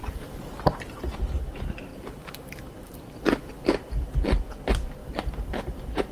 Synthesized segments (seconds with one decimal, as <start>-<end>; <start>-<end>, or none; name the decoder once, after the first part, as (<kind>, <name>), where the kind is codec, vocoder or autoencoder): 0.0-0.8 (vocoder, BigVGAN v2); 5.0-6.1